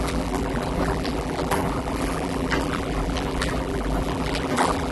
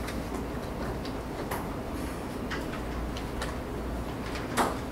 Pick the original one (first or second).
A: second